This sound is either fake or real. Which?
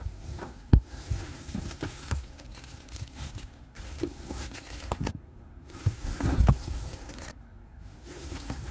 fake